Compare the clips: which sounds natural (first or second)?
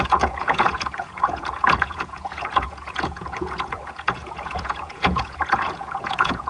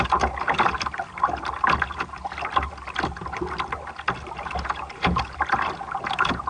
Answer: second